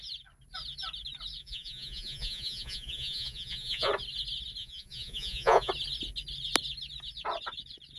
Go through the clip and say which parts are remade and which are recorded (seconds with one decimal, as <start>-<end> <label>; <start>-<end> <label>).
0.0-1.4 recorded; 1.4-3.9 remade; 3.9-4.6 recorded; 4.6-5.7 remade; 5.7-8.0 recorded

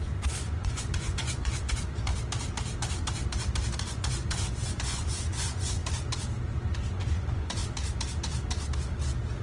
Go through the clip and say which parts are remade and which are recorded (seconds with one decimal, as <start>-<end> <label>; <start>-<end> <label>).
0.0-2.1 remade; 2.1-3.9 recorded; 3.9-5.8 remade; 5.8-6.9 recorded; 6.9-7.6 remade; 7.6-9.4 recorded

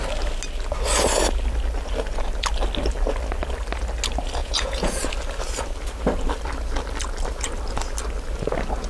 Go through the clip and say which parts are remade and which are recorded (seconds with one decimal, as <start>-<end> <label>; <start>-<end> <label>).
0.0-4.4 recorded; 4.4-5.0 remade; 5.0-8.9 recorded